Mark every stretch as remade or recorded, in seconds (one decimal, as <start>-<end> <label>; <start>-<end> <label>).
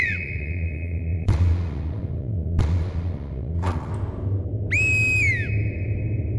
0.0-3.9 remade; 3.9-6.4 recorded